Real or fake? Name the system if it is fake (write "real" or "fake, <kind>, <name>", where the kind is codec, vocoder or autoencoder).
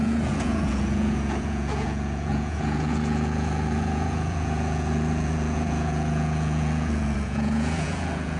fake, vocoder, Vocos